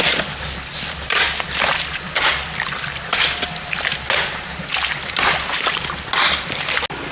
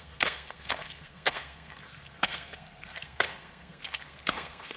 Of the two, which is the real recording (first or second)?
first